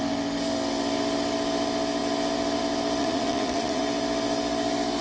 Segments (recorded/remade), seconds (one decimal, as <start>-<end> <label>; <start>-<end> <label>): 0.0-3.0 recorded; 3.0-3.8 remade; 3.8-5.0 recorded